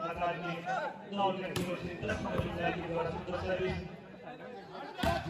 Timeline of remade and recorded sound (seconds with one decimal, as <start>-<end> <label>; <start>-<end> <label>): 0.0-1.6 recorded; 1.6-2.5 remade; 2.5-5.3 recorded